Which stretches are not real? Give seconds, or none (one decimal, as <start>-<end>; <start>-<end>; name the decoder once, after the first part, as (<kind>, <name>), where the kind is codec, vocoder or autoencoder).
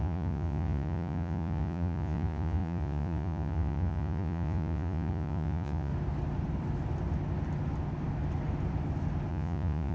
0.0-5.9 (vocoder, Vocos); 9.3-9.9